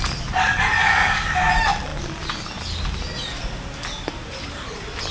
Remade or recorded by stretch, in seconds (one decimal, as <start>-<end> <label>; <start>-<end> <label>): 0.0-0.8 recorded; 0.8-1.5 remade; 1.5-5.1 recorded